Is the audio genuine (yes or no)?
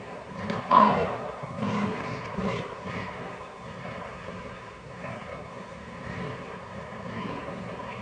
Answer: no